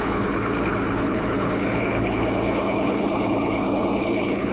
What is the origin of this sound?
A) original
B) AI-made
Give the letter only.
B